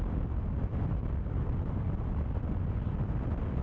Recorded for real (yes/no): yes